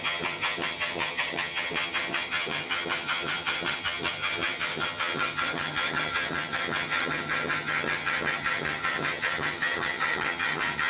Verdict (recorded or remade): remade